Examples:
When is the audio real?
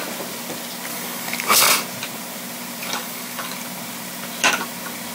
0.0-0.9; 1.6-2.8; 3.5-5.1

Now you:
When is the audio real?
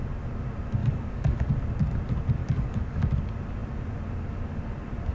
0.0-0.8; 1.5-2.4; 3.0-5.1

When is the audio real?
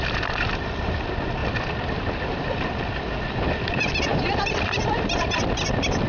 0.0-6.1